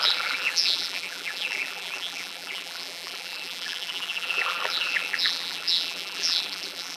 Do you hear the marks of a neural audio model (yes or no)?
yes